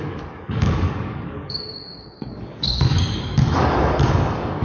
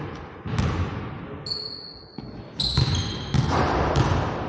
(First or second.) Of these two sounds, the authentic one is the second